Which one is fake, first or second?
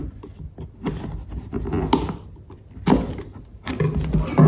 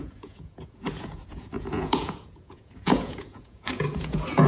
second